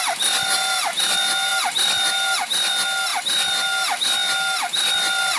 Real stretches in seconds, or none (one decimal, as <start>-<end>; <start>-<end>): 0.0-5.4

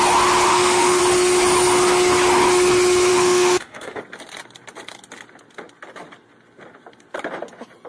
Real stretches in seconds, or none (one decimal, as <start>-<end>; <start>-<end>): 0.0-0.5; 1.0-3.1; 4.0-7.9